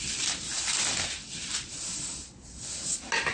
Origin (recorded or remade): recorded